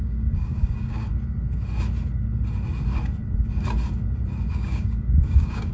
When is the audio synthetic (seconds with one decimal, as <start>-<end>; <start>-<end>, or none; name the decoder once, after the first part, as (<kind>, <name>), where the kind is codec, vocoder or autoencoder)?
0.0-1.1 (codec, DAC); 4.5-5.7